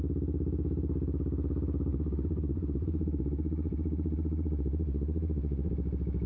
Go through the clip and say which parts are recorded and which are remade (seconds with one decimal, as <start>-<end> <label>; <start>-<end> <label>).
0.0-1.9 recorded; 1.9-5.7 remade; 5.7-6.3 recorded